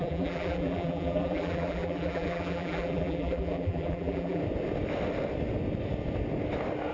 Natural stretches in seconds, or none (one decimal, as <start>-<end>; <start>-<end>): 4.4-6.9